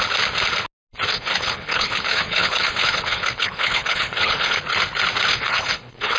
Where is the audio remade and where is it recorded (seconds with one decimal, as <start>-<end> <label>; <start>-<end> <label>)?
0.0-1.1 recorded; 1.1-4.6 remade; 4.6-5.3 recorded; 5.3-6.2 remade